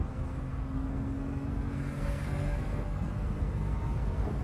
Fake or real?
fake